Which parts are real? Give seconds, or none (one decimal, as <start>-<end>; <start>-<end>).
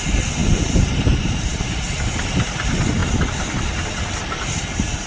0.0-5.1